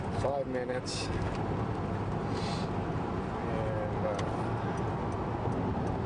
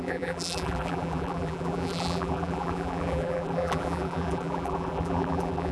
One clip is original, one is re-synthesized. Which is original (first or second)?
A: first